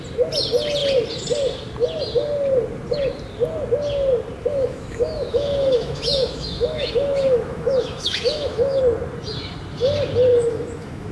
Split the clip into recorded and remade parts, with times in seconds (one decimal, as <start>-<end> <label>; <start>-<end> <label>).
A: 0.0-4.5 recorded; 4.5-8.8 remade; 8.8-10.3 recorded; 10.3-11.1 remade